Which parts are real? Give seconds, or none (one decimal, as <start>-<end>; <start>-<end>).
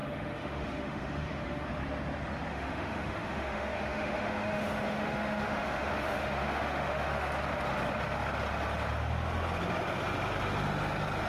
1.7-2.5; 7.3-11.3